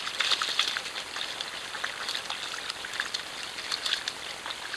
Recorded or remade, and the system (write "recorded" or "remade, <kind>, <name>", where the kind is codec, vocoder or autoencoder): recorded